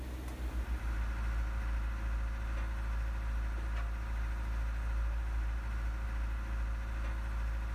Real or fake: real